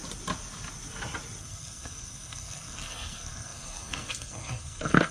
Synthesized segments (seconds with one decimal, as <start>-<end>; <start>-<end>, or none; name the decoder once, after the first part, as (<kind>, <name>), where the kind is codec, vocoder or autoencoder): 1.4-5.1 (codec, SNAC)